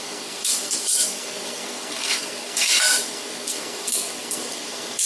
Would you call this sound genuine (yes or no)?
no